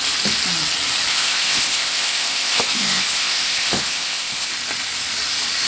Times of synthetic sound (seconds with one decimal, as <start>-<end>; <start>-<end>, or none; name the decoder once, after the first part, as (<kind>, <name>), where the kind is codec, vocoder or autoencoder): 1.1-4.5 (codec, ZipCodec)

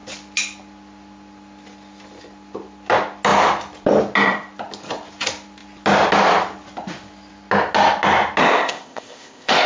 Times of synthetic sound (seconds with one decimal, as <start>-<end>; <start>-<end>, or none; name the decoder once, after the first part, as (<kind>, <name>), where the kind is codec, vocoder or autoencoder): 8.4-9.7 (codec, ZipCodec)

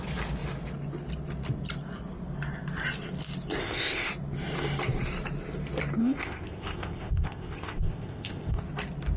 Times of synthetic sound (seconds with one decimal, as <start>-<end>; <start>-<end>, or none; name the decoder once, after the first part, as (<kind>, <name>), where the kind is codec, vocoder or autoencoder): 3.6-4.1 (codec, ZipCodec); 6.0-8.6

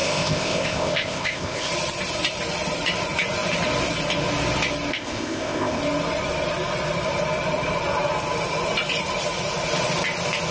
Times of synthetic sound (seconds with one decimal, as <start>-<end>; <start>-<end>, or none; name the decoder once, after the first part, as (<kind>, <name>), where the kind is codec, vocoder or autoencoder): 0.0-1.7 (codec, ZipCodec); 4.9-5.8

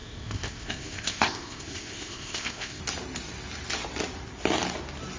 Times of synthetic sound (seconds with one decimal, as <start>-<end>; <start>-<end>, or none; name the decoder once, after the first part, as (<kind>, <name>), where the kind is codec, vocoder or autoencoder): 0.0-2.8 (codec, ZipCodec)

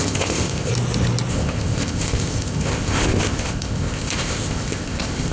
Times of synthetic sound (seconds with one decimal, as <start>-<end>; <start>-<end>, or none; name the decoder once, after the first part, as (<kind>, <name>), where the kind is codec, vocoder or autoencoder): 0.0-0.7 (codec, ZipCodec); 1.3-5.3